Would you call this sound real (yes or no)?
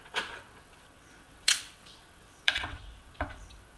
no